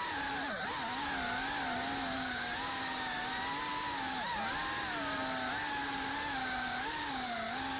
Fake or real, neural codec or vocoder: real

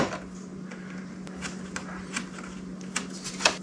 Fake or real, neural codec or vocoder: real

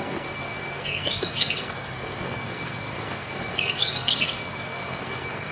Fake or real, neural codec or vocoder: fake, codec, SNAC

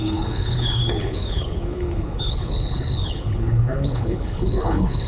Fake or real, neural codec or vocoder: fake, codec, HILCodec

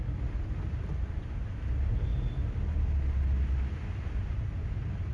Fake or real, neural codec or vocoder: real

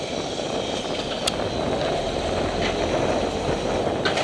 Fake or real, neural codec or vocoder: real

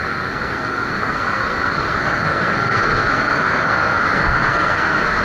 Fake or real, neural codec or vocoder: fake, codec, SNAC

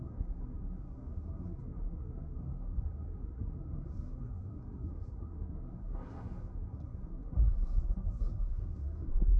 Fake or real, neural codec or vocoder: fake, codec, SNAC